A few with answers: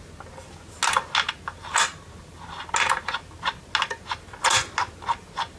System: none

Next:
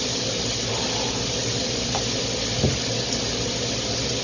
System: none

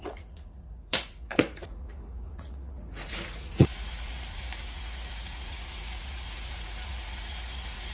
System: vocoder, Vocos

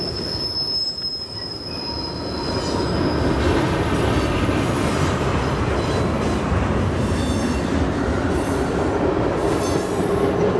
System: none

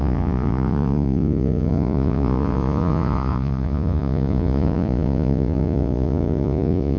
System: vocoder, Vocos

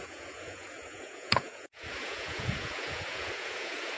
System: vocoder, Vocos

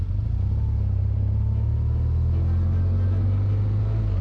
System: none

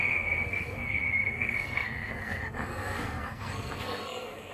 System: codec, SNAC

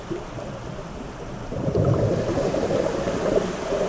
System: vocoder, BigVGAN v2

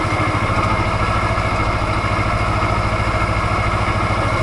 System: none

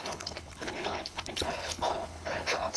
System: codec, HILCodec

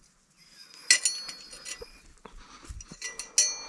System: none